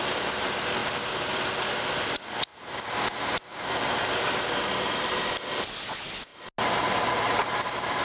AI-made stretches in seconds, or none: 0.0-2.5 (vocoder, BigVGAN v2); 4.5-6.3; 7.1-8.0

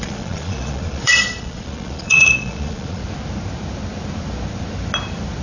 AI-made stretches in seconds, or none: 0.0-3.0 (vocoder, Vocos)

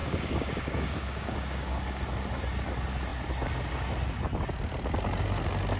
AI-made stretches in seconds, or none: 0.0-2.0 (codec, DAC)